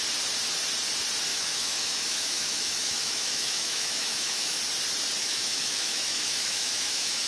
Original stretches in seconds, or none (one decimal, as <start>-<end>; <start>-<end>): 0.0-1.3; 4.6-5.2